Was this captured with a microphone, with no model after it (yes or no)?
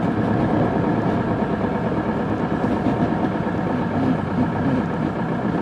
yes